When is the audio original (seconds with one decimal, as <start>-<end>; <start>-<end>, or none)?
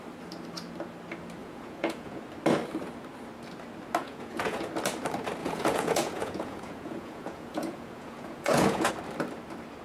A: 0.0-1.4; 2.2-4.0; 4.7-5.4; 8.9-9.8